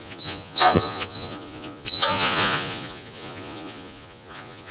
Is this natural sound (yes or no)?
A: no